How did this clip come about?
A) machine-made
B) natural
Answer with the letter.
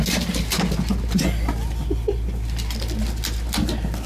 B